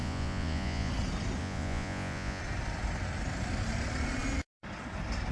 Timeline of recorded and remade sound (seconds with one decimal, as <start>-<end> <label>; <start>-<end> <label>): 0.0-0.9 remade; 0.9-1.4 recorded; 1.4-2.4 remade; 2.4-5.3 recorded